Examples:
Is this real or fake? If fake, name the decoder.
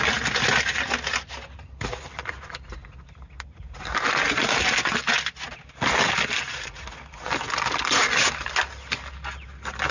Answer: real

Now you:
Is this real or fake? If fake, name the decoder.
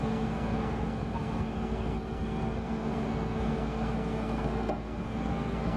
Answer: fake, codec, SNAC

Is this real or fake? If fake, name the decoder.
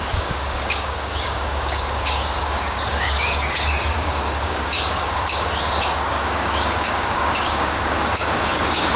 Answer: fake, codec, DAC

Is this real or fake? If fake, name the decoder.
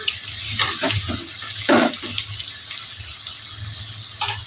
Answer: real